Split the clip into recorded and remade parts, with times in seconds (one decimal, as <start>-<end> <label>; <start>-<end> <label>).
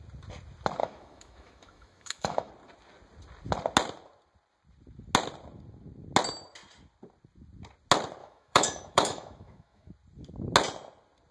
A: 0.0-0.8 recorded; 0.8-2.5 remade; 2.5-8.2 recorded; 8.2-9.9 remade; 9.9-11.3 recorded